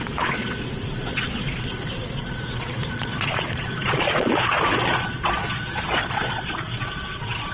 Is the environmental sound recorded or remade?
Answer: remade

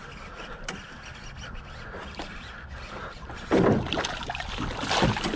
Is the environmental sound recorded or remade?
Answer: recorded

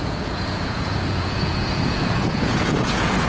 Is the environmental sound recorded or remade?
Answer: remade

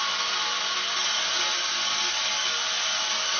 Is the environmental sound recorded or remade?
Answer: recorded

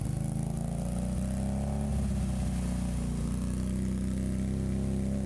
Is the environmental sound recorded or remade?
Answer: recorded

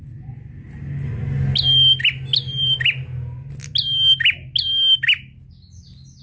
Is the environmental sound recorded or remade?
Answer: recorded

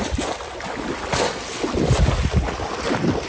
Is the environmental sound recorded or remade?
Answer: recorded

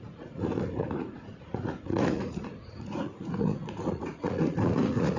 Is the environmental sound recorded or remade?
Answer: remade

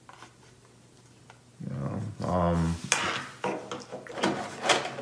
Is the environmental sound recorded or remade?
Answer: recorded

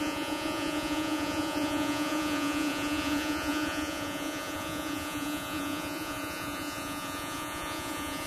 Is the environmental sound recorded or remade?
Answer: remade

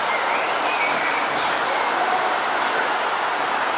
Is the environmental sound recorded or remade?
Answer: recorded